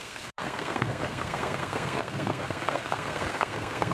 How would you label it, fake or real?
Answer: fake